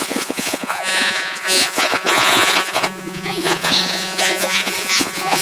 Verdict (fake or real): fake